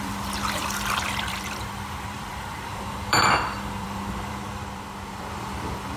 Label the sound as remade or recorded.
remade